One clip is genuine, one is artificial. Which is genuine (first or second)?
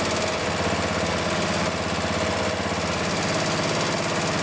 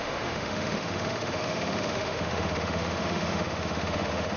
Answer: first